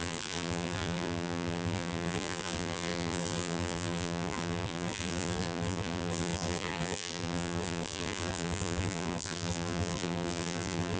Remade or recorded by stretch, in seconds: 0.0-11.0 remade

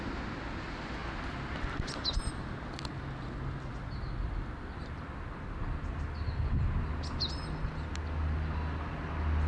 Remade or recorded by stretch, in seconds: 0.0-9.5 recorded

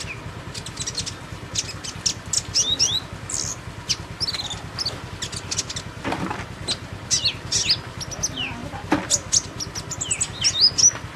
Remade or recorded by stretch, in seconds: 0.0-11.2 recorded

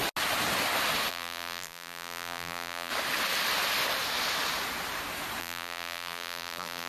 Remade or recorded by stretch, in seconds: 0.0-1.1 recorded; 1.1-2.9 remade; 2.9-5.4 recorded; 5.4-6.9 remade

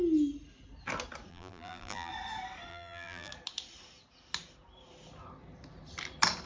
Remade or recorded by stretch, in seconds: 0.0-1.3 recorded; 1.3-2.1 remade; 2.1-2.7 recorded; 2.7-3.3 remade; 3.3-6.5 recorded